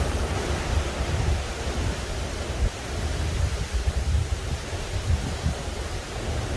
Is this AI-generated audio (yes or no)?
no